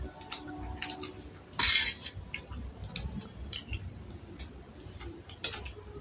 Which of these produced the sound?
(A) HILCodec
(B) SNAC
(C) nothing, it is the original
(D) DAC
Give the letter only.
C